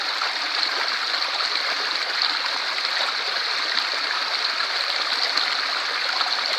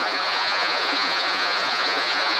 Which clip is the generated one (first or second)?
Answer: second